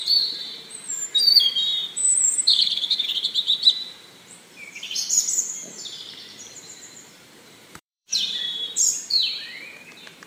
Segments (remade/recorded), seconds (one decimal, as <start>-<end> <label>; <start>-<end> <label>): 0.0-10.3 remade